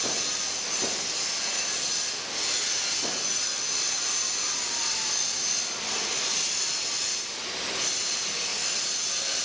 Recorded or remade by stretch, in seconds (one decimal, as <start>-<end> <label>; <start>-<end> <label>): 0.0-8.5 recorded; 8.5-9.4 remade